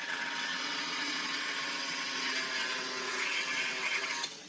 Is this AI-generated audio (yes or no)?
yes